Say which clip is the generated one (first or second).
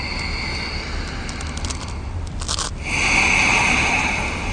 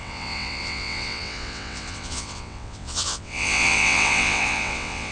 second